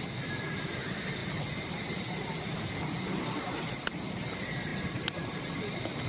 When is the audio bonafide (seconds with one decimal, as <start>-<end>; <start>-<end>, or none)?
0.0-1.2; 1.8-4.7; 5.2-6.1